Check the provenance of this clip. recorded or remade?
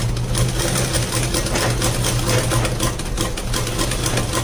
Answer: recorded